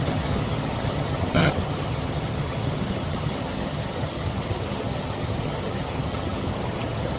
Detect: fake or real fake